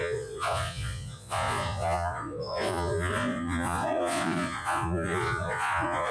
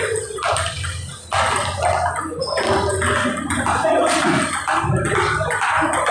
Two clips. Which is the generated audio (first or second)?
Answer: first